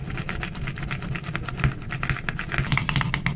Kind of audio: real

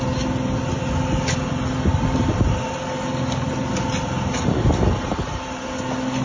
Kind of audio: real